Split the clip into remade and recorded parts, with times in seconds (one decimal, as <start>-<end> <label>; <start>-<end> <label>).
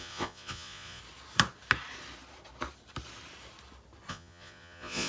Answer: 0.0-1.0 remade; 1.0-4.1 recorded; 4.1-5.1 remade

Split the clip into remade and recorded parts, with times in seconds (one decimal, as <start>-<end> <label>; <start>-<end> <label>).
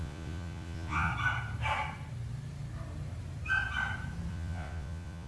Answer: 0.0-1.1 remade; 1.1-4.3 recorded; 4.3-5.3 remade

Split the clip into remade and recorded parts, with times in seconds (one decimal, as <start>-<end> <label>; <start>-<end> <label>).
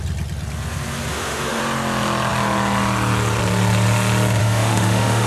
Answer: 0.0-1.1 recorded; 1.1-1.6 remade; 1.6-4.4 recorded; 4.4-5.3 remade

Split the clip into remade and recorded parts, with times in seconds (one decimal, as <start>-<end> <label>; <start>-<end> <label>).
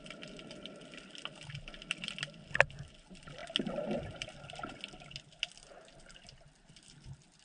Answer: 0.0-7.4 recorded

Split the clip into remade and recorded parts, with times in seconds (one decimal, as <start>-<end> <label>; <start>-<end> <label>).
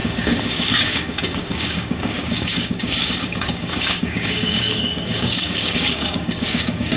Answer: 0.0-7.0 remade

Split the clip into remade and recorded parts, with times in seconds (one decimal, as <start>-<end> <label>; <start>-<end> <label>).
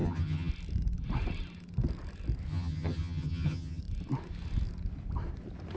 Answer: 0.0-0.5 remade; 0.5-2.5 recorded; 2.5-3.8 remade; 3.8-5.8 recorded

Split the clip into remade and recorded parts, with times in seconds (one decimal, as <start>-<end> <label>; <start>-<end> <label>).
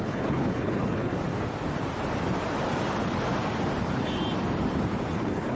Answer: 0.0-1.1 remade; 1.1-3.8 recorded; 3.8-4.2 remade; 4.2-5.1 recorded; 5.1-5.5 remade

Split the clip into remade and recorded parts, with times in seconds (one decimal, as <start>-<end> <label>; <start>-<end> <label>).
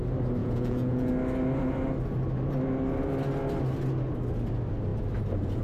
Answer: 0.0-0.4 recorded; 0.4-1.1 remade; 1.1-5.6 recorded